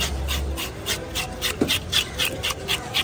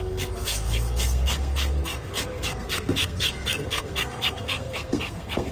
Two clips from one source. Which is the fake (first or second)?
second